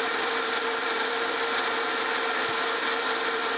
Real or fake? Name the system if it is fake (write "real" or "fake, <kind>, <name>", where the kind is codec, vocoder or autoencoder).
fake, vocoder, BigVGAN v2